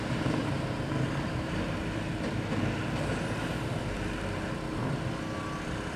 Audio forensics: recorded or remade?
remade